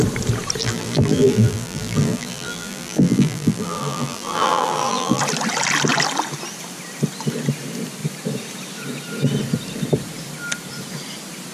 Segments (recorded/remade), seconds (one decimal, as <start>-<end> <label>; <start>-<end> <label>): 0.0-0.6 recorded; 0.6-5.2 remade; 5.2-11.5 recorded